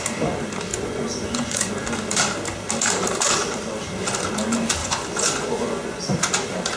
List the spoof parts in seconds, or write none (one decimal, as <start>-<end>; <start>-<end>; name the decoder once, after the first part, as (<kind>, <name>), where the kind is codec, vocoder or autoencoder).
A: 0.7-1.7 (vocoder, Vocos); 4.8-6.0